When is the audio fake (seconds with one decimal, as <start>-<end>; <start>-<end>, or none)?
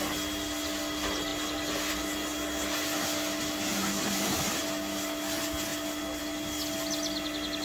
3.7-4.6